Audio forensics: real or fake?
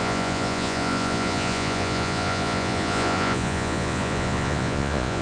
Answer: fake